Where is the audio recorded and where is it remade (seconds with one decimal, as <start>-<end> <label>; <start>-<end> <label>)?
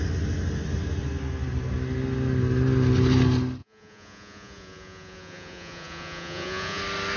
0.0-3.6 recorded; 3.6-6.8 remade; 6.8-7.2 recorded